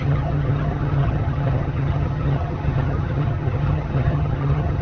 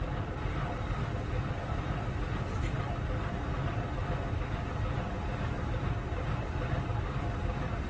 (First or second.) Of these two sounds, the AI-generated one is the first